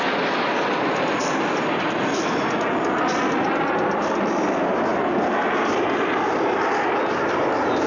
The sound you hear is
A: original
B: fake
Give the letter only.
A